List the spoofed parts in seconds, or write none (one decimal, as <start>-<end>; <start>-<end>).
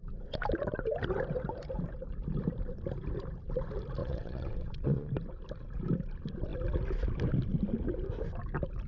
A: 4.0-5.1